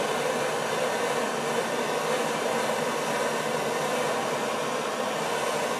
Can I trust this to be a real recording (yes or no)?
yes